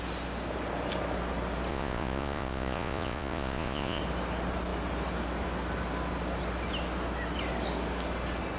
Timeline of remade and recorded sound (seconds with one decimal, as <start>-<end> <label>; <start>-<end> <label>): 0.0-1.7 recorded; 1.7-4.0 remade; 4.0-8.6 recorded